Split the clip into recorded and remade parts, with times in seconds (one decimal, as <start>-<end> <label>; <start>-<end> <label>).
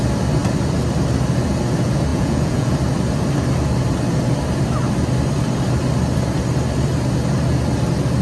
0.0-2.1 recorded; 2.1-2.7 remade; 2.7-8.2 recorded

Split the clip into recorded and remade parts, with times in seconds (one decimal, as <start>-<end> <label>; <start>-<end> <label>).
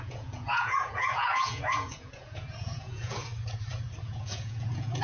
0.0-3.3 remade; 3.3-4.0 recorded; 4.0-5.0 remade